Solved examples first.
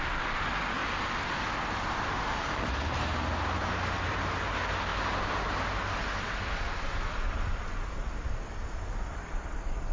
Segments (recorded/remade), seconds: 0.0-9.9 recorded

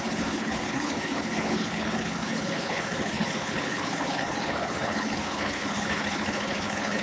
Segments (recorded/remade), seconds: 0.0-7.0 remade

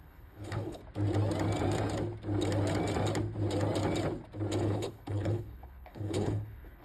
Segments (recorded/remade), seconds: 0.0-0.8 remade; 0.8-4.6 recorded; 4.6-6.8 remade

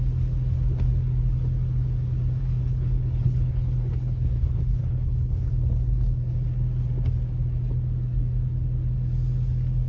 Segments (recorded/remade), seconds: 0.0-2.4 recorded; 2.4-5.5 remade; 5.5-9.9 recorded

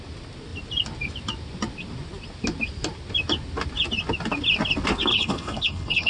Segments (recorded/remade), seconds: 0.0-5.1 recorded; 5.1-6.1 remade

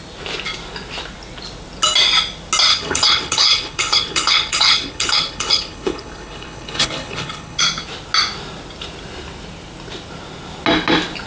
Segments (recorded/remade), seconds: 0.0-2.7 recorded; 2.7-7.6 remade; 7.6-11.3 recorded

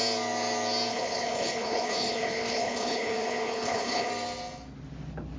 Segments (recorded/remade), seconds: 0.0-0.9 recorded; 0.9-4.1 remade; 4.1-5.4 recorded

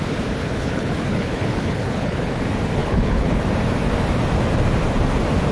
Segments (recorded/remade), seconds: 0.0-0.4 recorded; 0.4-2.4 remade; 2.4-2.8 recorded; 2.8-3.4 remade; 3.4-5.5 recorded